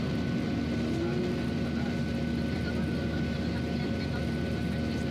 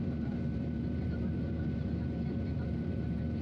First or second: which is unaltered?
first